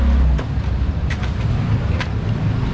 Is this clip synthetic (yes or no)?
no